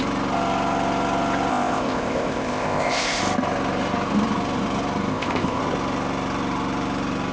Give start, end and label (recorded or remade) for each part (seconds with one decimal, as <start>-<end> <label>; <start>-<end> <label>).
0.0-1.5 recorded; 1.5-3.2 remade; 3.2-5.1 recorded; 5.1-5.6 remade; 5.6-7.3 recorded